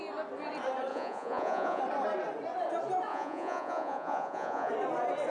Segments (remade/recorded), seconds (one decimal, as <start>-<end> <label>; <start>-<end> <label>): 0.0-0.9 recorded; 0.9-1.8 remade; 1.8-3.1 recorded; 3.1-4.7 remade; 4.7-5.3 recorded